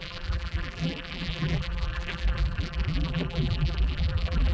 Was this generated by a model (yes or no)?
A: yes